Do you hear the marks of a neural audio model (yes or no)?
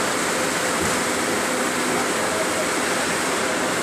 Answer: yes